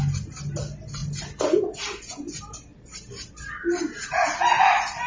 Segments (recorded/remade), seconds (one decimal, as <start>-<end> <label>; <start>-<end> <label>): 0.0-5.1 recorded